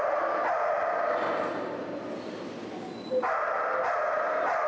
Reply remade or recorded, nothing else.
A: recorded